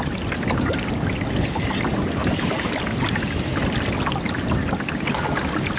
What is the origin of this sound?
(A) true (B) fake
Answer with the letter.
A